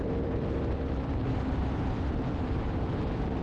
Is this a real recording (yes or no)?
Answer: no